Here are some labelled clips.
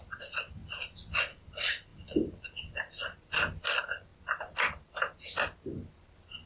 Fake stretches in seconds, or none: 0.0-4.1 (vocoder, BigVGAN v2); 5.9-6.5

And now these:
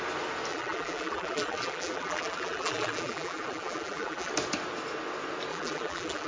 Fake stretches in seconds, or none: 0.5-4.3 (vocoder, BigVGAN v2); 5.5-6.3

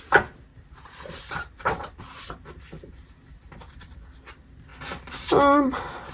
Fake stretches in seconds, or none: 0.5-2.6 (vocoder, BigVGAN v2)

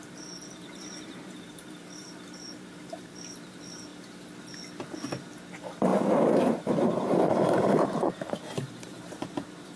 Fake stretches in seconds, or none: 0.0-3.9 (vocoder, BigVGAN v2); 5.5-5.9; 6.4-9.8

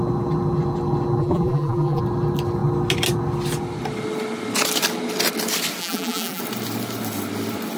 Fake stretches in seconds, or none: 1.2-2.0 (vocoder, BigVGAN v2); 5.8-6.4

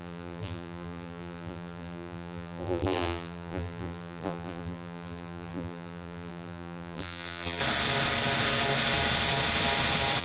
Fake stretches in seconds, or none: 0.0-7.6 (vocoder, BigVGAN v2)

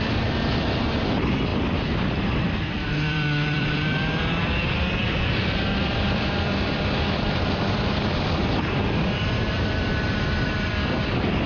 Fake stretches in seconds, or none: 0.0-11.5 (vocoder, BigVGAN v2)